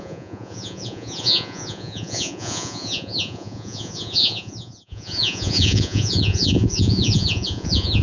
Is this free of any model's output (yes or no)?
no